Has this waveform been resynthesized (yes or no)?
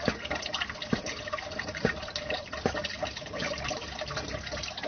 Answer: no